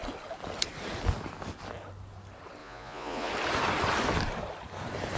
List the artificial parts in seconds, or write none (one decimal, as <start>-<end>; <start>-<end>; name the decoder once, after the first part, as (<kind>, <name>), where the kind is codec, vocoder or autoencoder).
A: 2.6-3.3 (vocoder, Vocos)